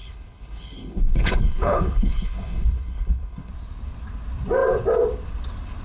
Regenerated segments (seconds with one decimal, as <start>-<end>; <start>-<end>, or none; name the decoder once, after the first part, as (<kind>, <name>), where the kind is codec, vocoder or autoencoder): 0.0-3.5 (codec, HILCodec)